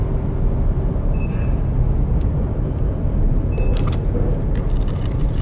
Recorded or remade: recorded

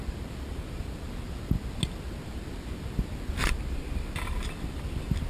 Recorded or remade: recorded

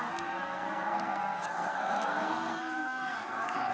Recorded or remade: remade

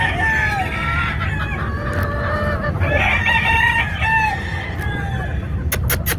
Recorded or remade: recorded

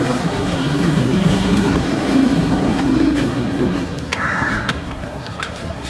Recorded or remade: remade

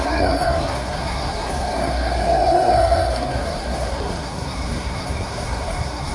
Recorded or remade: remade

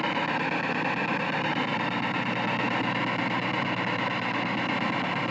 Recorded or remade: recorded